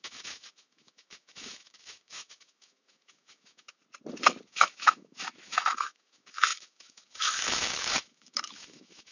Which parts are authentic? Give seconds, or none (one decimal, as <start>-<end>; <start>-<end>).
3.8-4.5